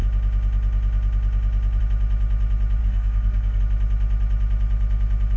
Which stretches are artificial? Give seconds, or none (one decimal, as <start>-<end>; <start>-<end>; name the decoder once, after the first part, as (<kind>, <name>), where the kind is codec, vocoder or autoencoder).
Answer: 2.8-3.6 (codec, SNAC)